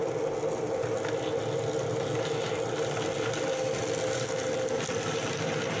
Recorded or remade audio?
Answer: recorded